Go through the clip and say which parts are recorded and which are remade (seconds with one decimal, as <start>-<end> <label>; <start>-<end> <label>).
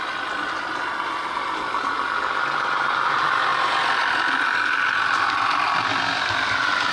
0.0-3.5 recorded; 3.5-4.1 remade; 4.1-6.9 recorded